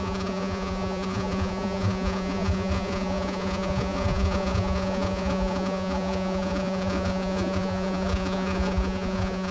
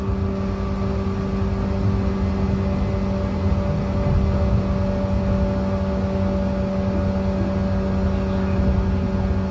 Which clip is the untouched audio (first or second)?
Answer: second